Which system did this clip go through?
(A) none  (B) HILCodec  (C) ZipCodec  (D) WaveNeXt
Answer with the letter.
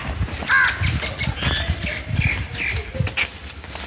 A